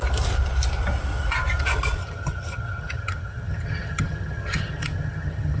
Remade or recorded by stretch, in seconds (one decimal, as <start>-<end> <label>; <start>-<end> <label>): 0.0-2.0 recorded; 2.0-5.6 remade